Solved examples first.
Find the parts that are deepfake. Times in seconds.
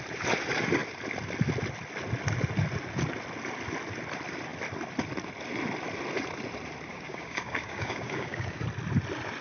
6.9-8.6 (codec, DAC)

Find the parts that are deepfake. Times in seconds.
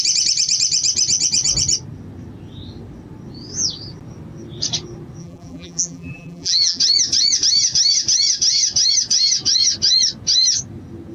5.2-6.8 (vocoder, BigVGAN v2)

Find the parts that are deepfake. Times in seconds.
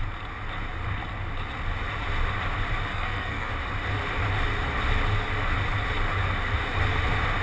2.9-3.5 (codec, SNAC)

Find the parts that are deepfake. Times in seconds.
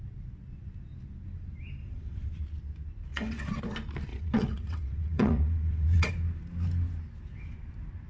1.8-2.3 (vocoder, WaveNeXt); 3.1-3.6; 4.1-6.1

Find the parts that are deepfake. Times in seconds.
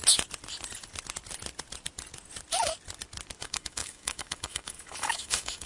3.4-5.7 (autoencoder, DAC-VAE)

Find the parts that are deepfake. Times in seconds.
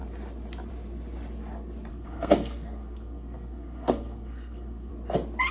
1.9-4.9 (codec, SNAC)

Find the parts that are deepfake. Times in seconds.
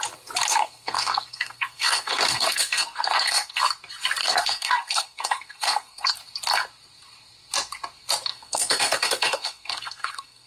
0.5-3.6 (codec, SNAC); 4.2-6.1; 8.3-10.5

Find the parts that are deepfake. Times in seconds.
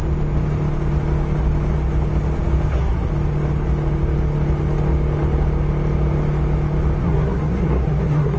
2.7-3.1 (codec, SNAC); 7.0-8.4